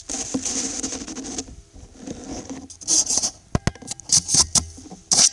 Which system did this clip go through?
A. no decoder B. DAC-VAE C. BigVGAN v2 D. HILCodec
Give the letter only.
A